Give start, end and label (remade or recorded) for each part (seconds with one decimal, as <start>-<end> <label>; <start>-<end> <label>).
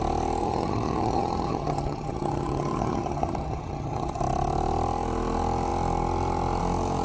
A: 0.0-0.4 recorded; 0.4-4.2 remade; 4.2-7.0 recorded